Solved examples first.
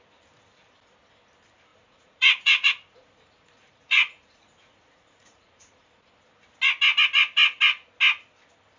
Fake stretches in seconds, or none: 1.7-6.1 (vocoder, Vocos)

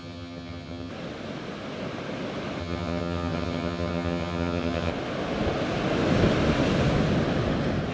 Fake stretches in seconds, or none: 0.0-0.9 (vocoder, HiFi-GAN); 2.6-4.9

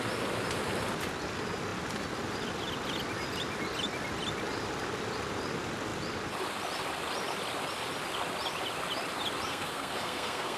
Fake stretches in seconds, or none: 9.5-10.6 (codec, SNAC)